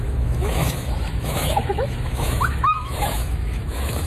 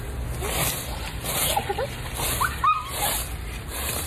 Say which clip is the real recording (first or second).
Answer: second